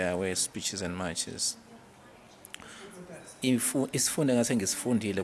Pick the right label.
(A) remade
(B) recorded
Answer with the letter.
B